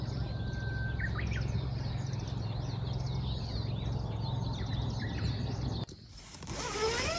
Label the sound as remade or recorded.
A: recorded